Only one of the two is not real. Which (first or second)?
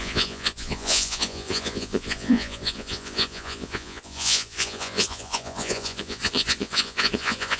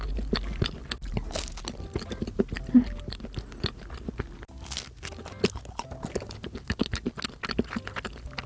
first